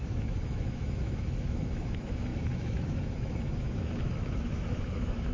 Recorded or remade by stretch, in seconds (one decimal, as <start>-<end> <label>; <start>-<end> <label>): 0.0-5.3 remade